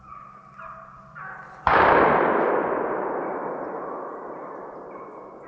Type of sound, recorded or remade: recorded